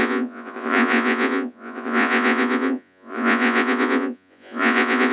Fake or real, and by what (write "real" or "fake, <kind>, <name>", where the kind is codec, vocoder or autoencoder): fake, vocoder, Vocos